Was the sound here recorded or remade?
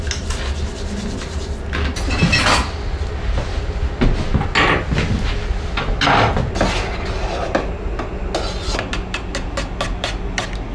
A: recorded